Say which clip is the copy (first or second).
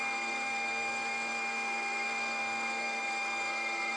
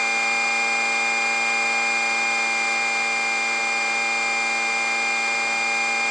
first